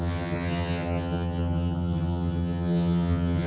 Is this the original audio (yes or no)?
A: no